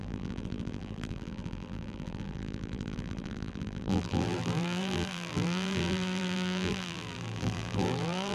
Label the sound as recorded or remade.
remade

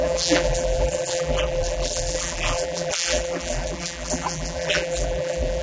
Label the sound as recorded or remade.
remade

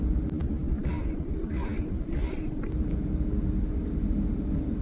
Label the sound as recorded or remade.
recorded